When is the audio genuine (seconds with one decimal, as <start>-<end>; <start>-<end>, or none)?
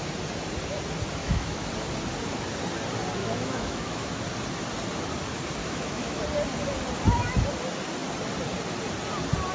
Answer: 0.0-1.2; 1.7-3.2; 4.2-5.6; 6.2-9.5